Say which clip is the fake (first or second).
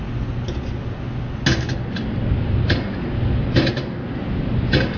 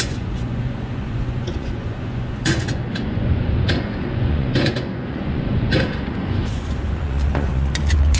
second